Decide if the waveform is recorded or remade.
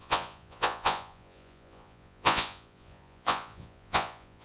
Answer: remade